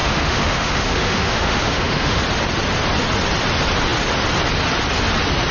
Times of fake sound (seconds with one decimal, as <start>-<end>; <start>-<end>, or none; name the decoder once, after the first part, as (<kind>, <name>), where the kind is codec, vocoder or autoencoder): 0.0-2.2 (autoencoder, DAC-VAE)